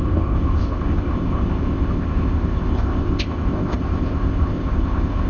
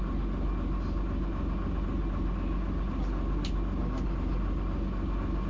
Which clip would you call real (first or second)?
second